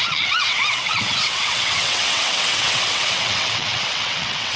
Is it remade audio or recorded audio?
remade